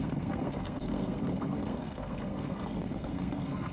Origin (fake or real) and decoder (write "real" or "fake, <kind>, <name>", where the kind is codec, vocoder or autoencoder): fake, codec, SNAC